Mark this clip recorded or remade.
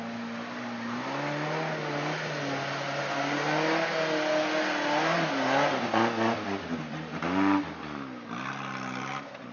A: recorded